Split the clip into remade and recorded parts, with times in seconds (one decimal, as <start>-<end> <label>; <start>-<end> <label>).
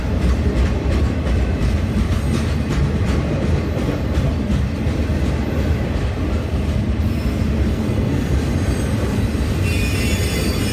0.0-7.7 recorded; 7.7-8.3 remade; 8.3-10.7 recorded